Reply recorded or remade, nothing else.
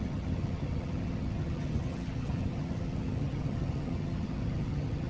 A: remade